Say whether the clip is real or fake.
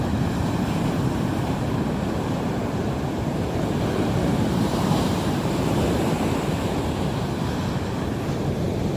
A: fake